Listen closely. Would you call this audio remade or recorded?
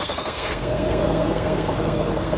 remade